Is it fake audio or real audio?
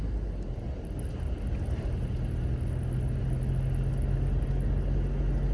real